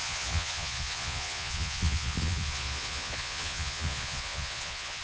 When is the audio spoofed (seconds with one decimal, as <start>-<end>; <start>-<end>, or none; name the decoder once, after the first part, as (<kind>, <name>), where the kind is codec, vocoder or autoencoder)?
0.0-5.0 (vocoder, Vocos)